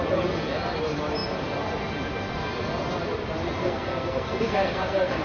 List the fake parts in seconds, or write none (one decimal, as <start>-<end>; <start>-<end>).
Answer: 3.6-5.2